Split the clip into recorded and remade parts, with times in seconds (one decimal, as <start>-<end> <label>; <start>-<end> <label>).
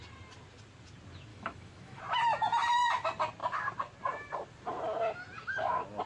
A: 0.0-1.3 recorded; 1.3-2.0 remade; 2.0-6.1 recorded